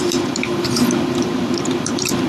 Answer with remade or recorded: remade